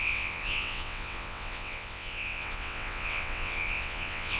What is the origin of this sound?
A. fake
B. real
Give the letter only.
A